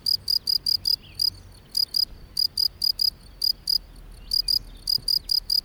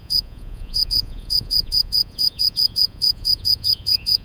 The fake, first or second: second